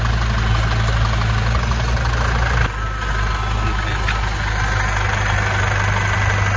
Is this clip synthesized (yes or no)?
no